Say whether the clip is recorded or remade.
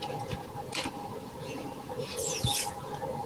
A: remade